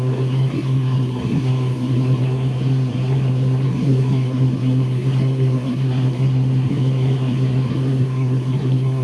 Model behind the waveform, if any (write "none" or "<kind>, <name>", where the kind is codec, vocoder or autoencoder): codec, SNAC